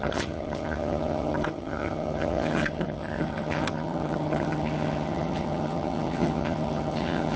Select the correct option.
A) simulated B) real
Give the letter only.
A